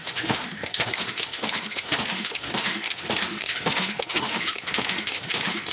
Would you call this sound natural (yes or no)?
no